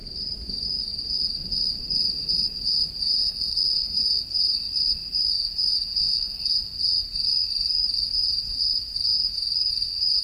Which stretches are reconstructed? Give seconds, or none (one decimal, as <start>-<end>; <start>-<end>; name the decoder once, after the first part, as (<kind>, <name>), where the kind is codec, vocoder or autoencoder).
3.2-4.2 (codec, SNAC); 6.0-6.5